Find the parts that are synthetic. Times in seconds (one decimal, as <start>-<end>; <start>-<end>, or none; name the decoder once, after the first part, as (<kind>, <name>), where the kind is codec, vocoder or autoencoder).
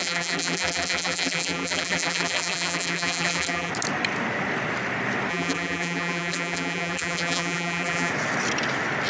0.0-3.7 (vocoder, BigVGAN v2); 5.3-8.1